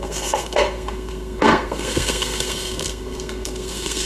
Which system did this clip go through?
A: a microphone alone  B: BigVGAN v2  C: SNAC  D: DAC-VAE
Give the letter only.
C